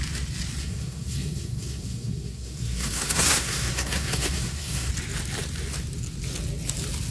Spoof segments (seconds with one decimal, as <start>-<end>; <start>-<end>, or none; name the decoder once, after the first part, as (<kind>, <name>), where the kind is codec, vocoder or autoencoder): 0.6-4.9 (codec, SNAC)